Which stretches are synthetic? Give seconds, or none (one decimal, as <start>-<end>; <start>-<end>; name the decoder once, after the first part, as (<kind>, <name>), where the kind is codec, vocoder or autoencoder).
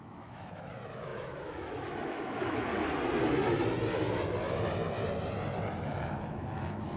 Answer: 0.0-2.7 (autoencoder, DAC-VAE); 5.9-7.0